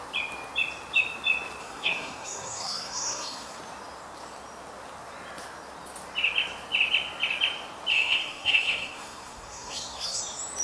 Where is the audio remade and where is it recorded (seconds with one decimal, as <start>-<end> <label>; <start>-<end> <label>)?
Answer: 0.0-1.6 recorded; 1.6-3.6 remade; 3.6-7.9 recorded; 7.9-10.2 remade; 10.2-10.6 recorded